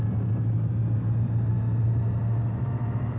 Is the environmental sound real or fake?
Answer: real